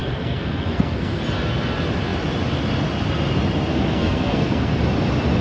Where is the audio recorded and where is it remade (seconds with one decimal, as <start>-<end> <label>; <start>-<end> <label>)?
0.0-1.2 remade; 1.2-3.7 recorded; 3.7-4.8 remade; 4.8-5.4 recorded